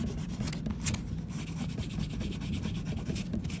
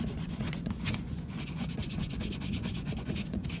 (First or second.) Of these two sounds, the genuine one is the first